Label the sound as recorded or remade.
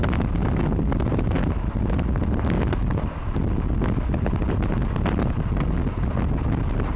recorded